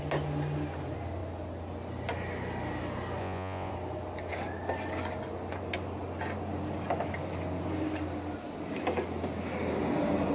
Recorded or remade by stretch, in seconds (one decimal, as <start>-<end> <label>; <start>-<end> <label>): 0.0-3.2 recorded; 3.2-3.7 remade; 3.7-10.3 recorded